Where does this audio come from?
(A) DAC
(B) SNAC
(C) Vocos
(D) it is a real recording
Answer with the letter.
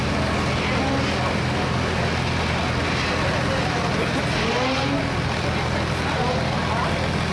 D